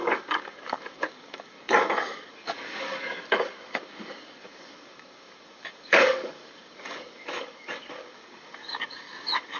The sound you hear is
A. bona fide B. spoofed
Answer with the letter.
B